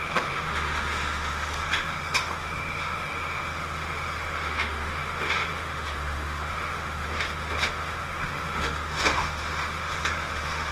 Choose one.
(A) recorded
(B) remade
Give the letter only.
B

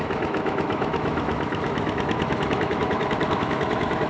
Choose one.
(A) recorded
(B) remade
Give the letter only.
B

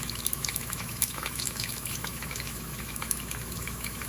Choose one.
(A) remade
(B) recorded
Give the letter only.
A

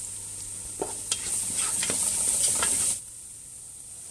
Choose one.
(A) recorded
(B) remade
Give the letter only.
A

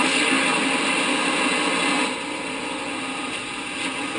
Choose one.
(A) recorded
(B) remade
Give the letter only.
A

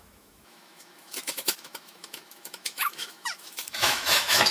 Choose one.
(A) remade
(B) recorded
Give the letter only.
A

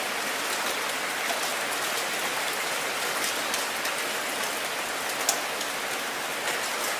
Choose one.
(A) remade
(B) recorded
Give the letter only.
B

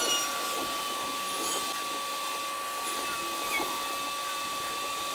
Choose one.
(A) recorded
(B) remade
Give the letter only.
A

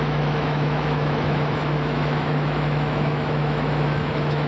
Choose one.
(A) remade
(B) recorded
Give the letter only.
A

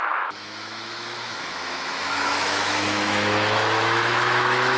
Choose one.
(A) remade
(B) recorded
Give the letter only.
A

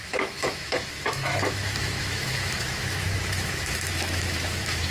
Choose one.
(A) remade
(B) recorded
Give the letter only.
A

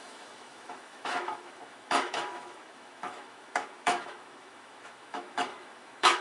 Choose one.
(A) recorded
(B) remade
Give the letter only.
B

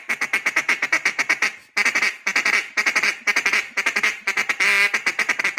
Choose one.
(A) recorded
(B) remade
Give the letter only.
A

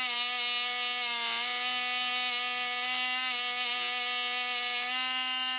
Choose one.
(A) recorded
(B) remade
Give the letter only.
A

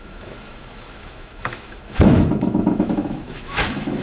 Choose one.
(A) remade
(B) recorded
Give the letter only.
A